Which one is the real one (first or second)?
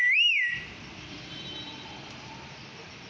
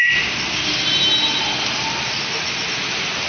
second